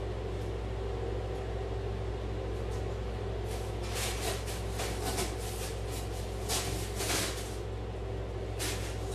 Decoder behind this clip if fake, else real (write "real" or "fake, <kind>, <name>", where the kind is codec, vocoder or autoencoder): real